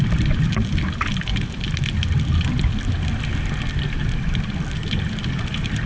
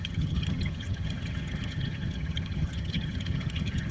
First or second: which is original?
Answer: first